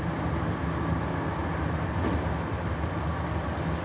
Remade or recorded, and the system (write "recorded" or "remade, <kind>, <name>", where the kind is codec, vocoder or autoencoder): recorded